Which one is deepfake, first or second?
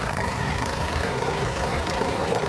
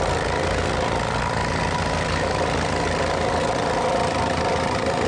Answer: first